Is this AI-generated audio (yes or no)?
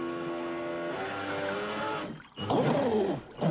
no